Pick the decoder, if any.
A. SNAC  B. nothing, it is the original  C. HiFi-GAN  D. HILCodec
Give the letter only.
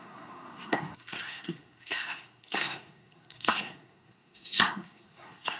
A